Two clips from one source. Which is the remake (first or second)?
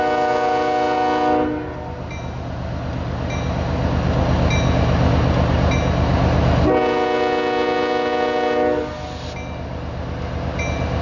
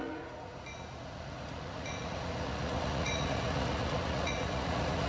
second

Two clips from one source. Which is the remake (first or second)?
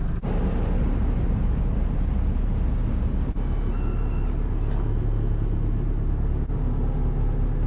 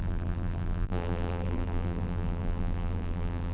second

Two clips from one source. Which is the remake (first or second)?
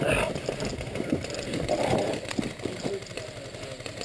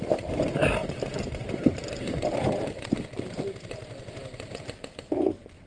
second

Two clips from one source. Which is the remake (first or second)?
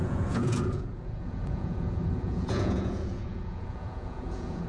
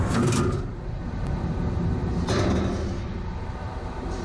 first